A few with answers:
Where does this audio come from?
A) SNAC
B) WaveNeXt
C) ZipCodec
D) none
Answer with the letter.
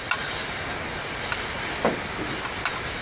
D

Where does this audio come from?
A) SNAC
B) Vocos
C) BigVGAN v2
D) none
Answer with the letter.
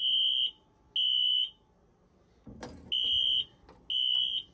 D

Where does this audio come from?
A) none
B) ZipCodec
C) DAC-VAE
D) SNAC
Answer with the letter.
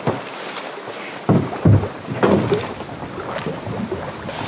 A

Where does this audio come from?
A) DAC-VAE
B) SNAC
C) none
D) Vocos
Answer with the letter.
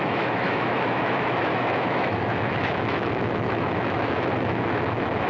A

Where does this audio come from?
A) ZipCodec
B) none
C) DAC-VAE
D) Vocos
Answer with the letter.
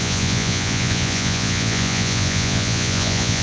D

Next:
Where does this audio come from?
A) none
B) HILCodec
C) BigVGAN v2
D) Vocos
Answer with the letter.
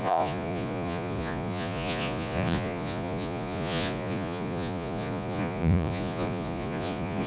D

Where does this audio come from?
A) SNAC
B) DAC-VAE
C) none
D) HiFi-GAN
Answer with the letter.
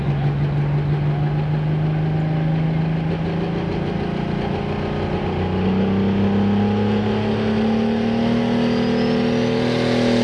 C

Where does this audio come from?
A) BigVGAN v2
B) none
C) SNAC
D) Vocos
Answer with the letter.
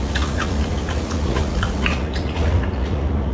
D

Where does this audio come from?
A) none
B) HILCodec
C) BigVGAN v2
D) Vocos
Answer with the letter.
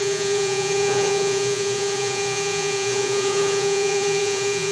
D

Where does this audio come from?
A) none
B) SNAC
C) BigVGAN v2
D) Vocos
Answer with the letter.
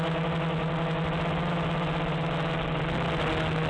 A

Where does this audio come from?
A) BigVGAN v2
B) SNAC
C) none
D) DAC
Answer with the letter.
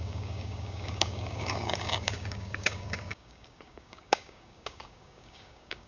D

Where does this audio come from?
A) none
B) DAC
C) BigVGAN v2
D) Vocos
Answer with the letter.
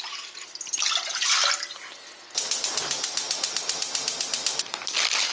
A